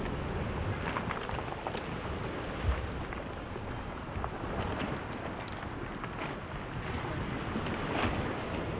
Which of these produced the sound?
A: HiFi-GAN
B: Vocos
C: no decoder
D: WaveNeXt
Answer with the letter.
C